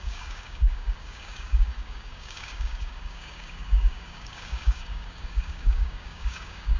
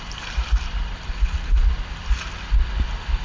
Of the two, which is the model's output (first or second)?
first